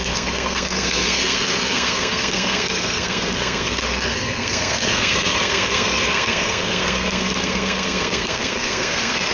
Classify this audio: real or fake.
fake